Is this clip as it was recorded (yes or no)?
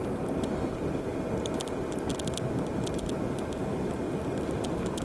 yes